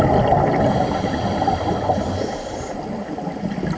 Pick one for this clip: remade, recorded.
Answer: recorded